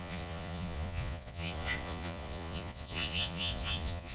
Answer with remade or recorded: remade